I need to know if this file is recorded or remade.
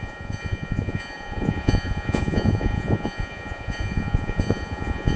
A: remade